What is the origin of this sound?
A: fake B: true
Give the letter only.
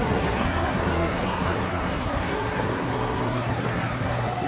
A